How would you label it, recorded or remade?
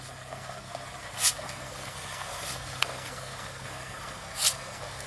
remade